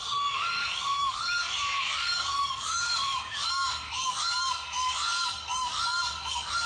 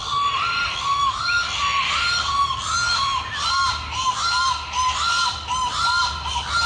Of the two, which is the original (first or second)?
second